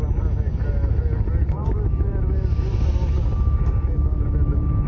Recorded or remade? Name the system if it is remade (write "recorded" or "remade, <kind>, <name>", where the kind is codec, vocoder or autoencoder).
recorded